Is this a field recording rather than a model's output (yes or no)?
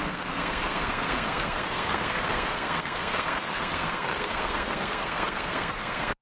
no